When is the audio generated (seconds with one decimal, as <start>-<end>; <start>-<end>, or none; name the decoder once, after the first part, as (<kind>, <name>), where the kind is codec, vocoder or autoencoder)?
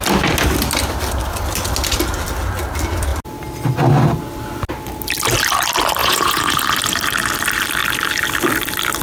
6.0-6.6 (vocoder, Vocos)